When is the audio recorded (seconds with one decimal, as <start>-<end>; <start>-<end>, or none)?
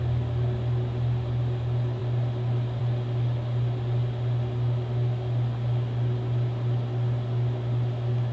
0.0-8.3